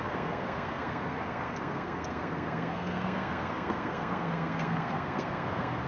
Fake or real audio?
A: fake